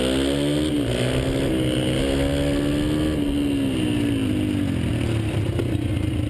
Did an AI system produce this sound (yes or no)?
no